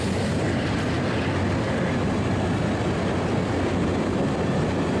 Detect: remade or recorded recorded